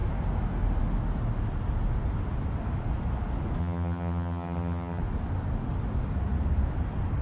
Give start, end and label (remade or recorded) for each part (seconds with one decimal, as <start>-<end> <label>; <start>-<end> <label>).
0.0-3.6 recorded; 3.6-5.0 remade; 5.0-7.2 recorded